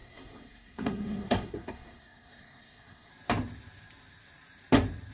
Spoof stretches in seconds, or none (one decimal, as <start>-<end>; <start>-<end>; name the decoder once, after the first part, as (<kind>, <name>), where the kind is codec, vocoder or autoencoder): 0.0-3.1 (codec, SNAC)